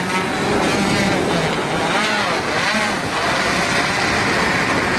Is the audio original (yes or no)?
yes